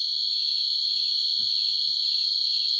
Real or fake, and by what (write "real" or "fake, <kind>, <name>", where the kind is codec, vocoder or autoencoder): real